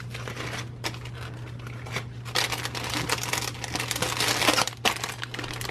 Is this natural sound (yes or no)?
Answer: yes